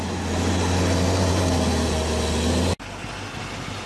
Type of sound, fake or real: real